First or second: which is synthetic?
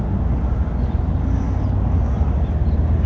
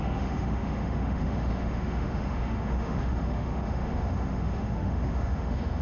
second